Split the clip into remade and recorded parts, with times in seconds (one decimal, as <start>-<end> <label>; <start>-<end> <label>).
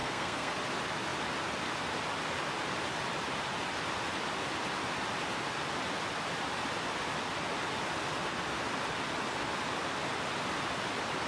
0.0-0.5 remade; 0.5-11.3 recorded